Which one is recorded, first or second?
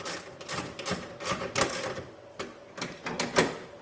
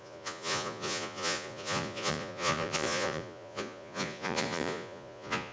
first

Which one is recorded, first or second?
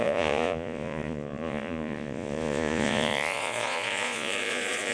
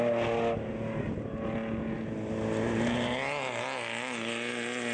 second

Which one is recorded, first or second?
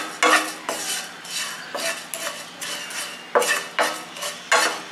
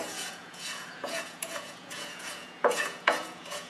first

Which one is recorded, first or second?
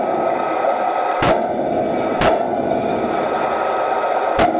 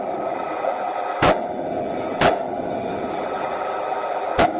first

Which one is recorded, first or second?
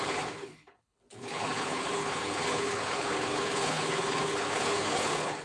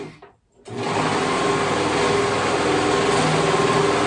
second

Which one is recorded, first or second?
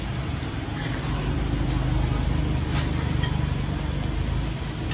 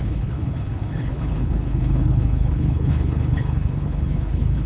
first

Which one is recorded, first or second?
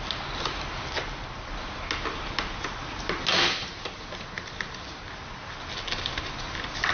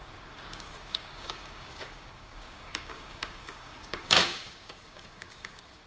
first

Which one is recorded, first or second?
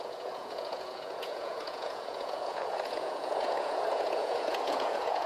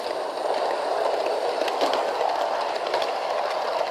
second